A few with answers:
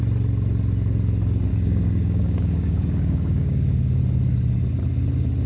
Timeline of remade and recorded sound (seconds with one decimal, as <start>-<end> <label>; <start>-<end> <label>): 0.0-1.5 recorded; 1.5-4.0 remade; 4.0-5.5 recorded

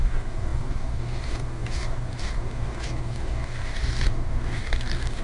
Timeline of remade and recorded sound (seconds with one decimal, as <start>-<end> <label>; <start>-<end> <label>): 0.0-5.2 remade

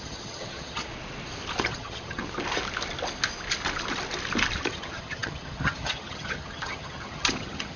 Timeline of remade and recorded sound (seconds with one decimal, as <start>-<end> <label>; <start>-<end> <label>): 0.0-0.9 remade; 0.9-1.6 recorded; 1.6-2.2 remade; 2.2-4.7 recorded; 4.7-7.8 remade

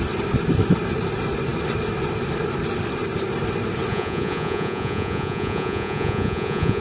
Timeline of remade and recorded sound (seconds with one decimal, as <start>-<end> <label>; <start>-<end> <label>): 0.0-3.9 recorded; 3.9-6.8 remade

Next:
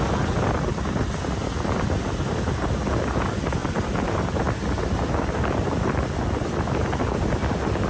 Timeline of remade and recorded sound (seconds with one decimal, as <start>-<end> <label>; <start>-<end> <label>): 0.0-7.9 recorded